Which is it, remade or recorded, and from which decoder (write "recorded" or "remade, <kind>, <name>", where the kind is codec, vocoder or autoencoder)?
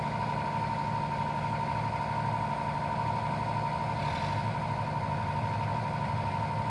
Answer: recorded